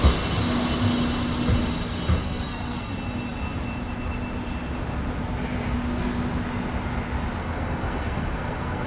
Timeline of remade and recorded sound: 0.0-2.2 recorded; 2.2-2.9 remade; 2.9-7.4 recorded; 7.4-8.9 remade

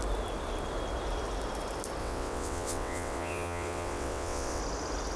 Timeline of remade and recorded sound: 0.0-2.0 recorded; 2.0-4.6 remade; 4.6-5.2 recorded